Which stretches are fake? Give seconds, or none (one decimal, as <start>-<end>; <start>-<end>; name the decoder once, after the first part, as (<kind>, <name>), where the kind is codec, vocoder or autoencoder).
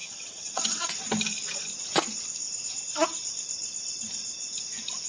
0.0-0.9 (vocoder, WaveNeXt)